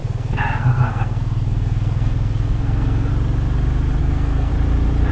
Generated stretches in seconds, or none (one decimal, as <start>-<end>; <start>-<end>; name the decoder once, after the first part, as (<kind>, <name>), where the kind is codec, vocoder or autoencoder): 0.0-3.1 (codec, SNAC); 4.0-4.5